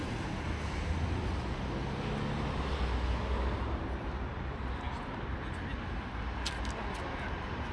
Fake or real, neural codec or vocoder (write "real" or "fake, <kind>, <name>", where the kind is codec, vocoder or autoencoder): real